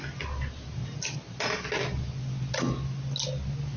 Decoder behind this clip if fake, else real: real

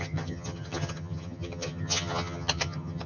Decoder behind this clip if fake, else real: fake, vocoder, HiFi-GAN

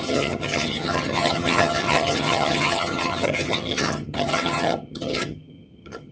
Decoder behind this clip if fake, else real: fake, vocoder, HiFi-GAN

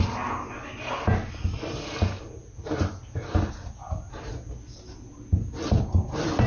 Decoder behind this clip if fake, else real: real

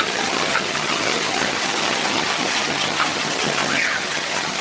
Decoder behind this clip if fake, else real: fake, vocoder, HiFi-GAN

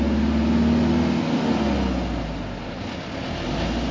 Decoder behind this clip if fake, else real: real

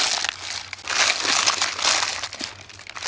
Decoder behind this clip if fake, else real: real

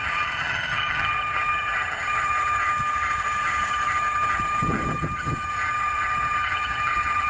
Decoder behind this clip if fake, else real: fake, vocoder, HiFi-GAN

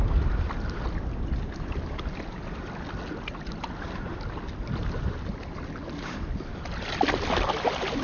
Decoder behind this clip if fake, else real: real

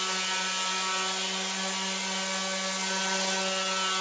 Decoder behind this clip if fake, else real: real